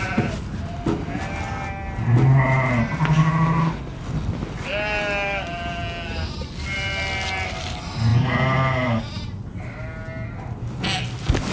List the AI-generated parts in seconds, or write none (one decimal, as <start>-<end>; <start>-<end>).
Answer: none